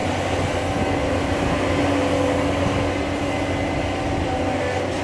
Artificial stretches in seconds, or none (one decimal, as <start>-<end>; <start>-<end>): none

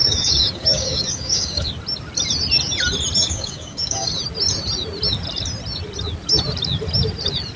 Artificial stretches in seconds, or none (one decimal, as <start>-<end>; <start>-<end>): 0.0-1.7; 3.2-4.1

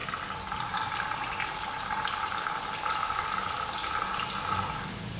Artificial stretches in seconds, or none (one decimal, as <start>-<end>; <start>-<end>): none

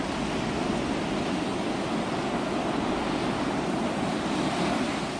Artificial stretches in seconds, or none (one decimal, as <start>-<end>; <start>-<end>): none

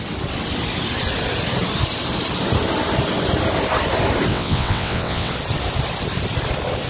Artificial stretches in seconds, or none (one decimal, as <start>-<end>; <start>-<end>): 4.3-5.3

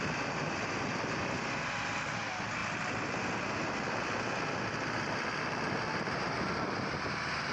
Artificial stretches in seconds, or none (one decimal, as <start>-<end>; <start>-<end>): none

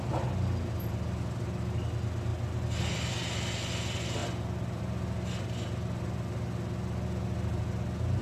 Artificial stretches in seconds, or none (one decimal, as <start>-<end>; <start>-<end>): none